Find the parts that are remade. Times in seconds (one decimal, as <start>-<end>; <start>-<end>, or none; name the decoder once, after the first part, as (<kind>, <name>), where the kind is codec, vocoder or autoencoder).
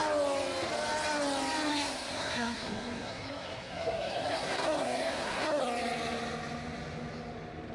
1.7-5.6 (codec, SNAC)